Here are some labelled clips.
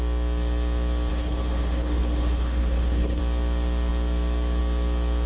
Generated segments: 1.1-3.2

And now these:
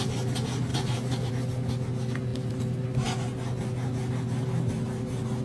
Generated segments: 0.7-1.3

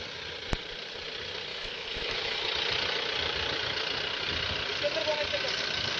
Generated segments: 1.5-2.4

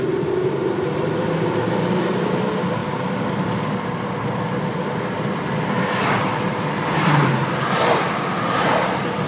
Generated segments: none

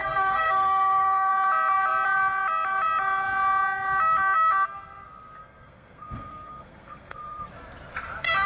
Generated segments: 0.0-1.3; 5.4-7.5

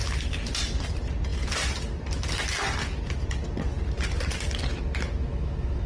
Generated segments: 5.2-5.9

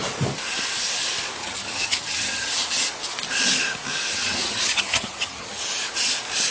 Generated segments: 1.4-2.5; 4.1-5.6